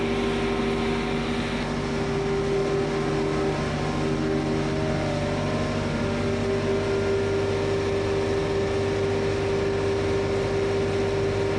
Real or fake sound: real